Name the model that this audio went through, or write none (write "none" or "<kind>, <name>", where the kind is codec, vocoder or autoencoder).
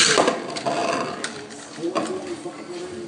none